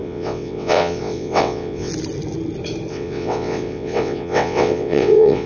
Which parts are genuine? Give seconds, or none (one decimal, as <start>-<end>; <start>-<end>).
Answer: 1.9-2.9